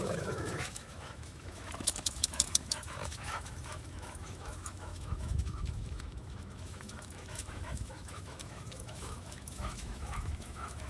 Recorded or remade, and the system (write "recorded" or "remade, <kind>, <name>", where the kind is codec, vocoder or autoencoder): remade, autoencoder, DAC-VAE